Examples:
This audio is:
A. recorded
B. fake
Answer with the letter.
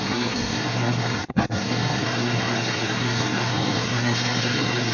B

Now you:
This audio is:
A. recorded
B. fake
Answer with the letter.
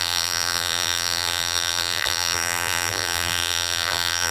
B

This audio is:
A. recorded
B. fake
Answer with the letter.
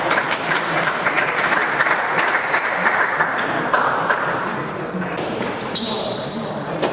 B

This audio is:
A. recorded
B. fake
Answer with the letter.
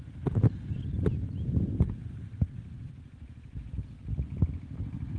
A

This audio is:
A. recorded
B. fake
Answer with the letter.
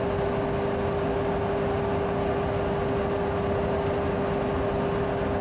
A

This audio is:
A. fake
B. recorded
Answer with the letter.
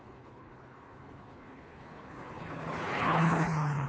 A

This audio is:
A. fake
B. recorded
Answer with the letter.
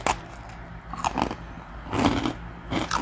B